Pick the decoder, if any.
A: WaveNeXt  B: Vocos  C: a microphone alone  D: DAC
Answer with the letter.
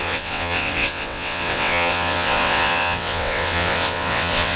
A